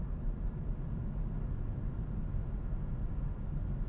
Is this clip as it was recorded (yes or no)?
yes